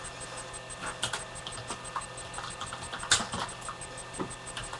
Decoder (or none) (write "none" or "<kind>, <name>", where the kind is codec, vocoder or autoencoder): none